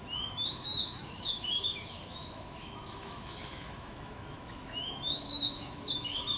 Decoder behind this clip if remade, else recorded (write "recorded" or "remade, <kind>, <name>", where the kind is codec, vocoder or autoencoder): remade, autoencoder, DAC-VAE